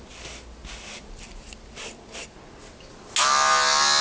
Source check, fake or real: real